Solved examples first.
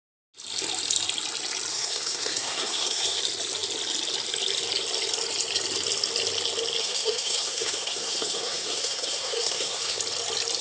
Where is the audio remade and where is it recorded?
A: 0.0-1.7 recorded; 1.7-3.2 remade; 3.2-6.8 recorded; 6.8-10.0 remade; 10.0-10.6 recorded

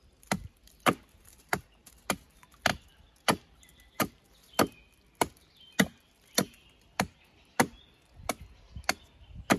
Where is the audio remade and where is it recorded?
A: 0.0-9.6 recorded

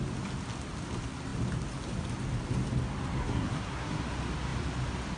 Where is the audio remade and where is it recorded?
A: 0.0-3.2 recorded; 3.2-4.0 remade; 4.0-5.2 recorded

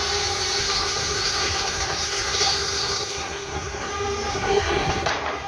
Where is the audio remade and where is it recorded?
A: 0.0-0.6 recorded; 0.6-3.9 remade; 3.9-4.3 recorded; 4.3-5.1 remade; 5.1-5.5 recorded

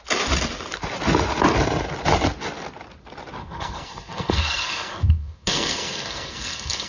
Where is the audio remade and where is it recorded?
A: 0.0-3.4 recorded; 3.4-6.9 remade

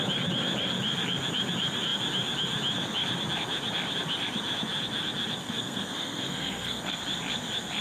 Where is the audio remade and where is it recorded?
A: 0.0-5.4 recorded; 5.4-7.0 remade; 7.0-7.8 recorded

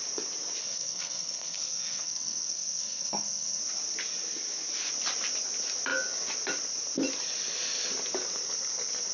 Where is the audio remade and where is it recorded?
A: 0.0-0.6 recorded; 0.6-3.6 remade; 3.6-9.1 recorded

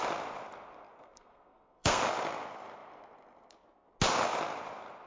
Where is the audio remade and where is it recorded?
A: 0.0-1.0 recorded; 1.0-2.0 remade; 2.0-5.1 recorded